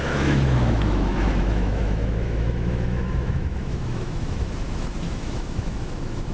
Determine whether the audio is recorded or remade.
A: remade